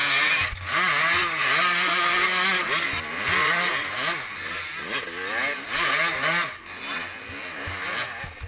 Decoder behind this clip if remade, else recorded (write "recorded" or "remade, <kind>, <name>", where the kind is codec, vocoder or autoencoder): recorded